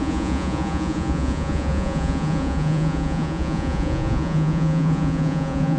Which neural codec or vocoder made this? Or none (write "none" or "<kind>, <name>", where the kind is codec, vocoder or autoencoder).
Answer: vocoder, Vocos